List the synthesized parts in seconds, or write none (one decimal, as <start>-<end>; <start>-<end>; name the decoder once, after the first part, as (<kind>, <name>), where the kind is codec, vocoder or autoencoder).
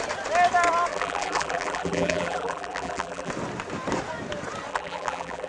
0.9-3.3 (vocoder, BigVGAN v2); 4.7-5.5